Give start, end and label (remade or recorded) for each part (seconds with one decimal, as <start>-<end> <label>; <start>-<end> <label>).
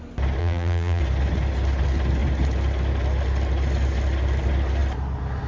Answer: 0.0-0.4 recorded; 0.4-1.0 remade; 1.0-5.5 recorded